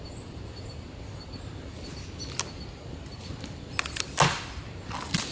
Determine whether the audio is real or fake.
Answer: real